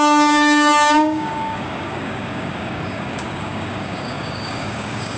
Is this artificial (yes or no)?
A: yes